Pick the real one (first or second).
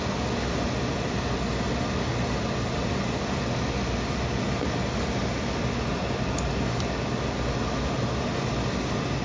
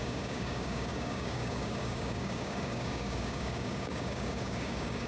first